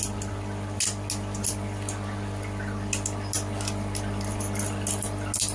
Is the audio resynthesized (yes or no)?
no